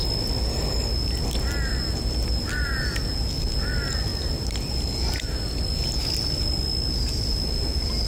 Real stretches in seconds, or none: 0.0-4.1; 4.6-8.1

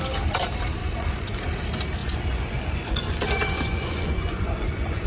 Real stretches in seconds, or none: 0.0-0.8; 1.4-2.0

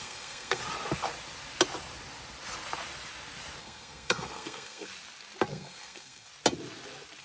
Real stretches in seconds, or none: 0.6-3.6; 4.9-5.5; 6.3-7.2

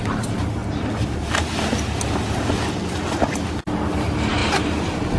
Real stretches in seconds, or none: 0.0-5.2